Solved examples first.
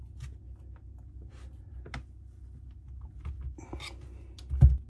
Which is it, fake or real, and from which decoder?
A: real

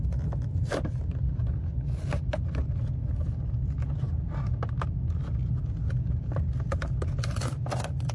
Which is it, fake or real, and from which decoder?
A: real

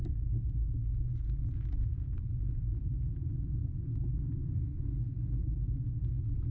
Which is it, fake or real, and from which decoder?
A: real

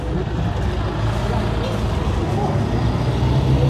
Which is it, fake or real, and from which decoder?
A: real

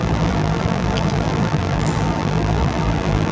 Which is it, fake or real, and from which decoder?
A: fake, vocoder, BigVGAN v2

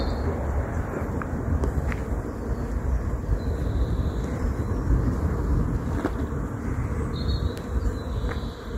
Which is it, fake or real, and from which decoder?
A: fake, vocoder, BigVGAN v2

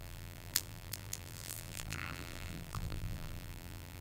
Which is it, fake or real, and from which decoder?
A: fake, vocoder, BigVGAN v2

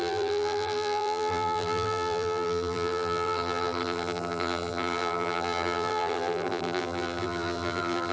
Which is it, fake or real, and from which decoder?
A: fake, vocoder, BigVGAN v2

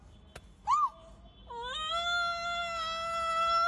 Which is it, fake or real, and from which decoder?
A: real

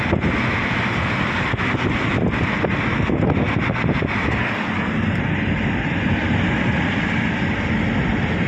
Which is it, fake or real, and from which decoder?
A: real